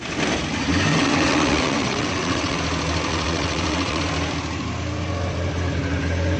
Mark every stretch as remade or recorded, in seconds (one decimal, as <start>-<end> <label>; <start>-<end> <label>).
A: 0.0-0.9 recorded; 0.9-2.6 remade; 2.6-3.1 recorded; 3.1-4.0 remade; 4.0-6.4 recorded